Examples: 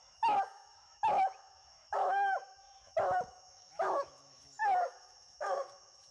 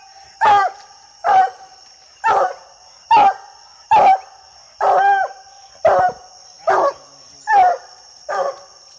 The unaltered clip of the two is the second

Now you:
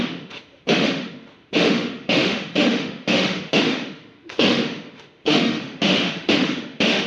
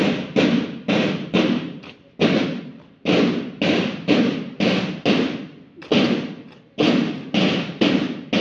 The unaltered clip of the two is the second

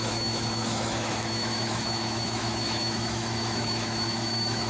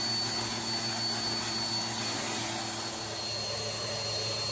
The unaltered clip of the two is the second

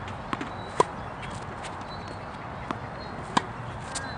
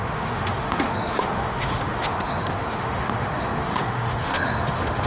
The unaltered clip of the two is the first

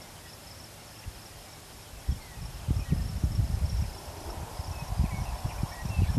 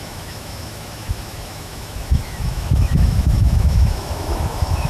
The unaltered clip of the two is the first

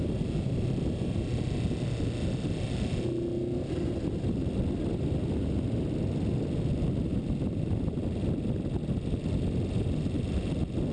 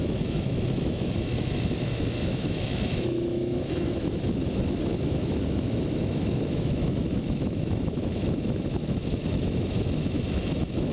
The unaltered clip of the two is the first